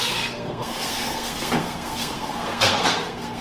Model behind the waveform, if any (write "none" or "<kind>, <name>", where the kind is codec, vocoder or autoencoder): codec, SNAC